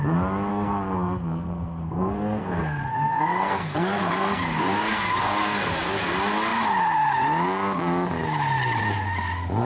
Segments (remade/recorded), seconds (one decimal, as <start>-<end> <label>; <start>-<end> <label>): 0.0-0.5 recorded; 0.5-5.7 remade; 5.7-9.6 recorded